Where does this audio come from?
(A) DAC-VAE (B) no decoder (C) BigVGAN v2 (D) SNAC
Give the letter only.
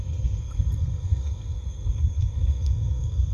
D